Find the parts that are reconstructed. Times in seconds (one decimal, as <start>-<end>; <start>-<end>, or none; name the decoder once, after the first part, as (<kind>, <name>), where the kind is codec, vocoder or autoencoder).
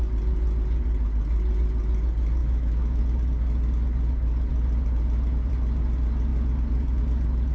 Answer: 2.4-3.0 (autoencoder, DAC-VAE)